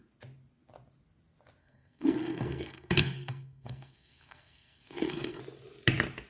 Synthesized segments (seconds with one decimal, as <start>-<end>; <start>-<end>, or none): 1.6-5.4